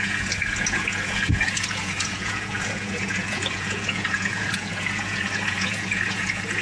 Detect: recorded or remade remade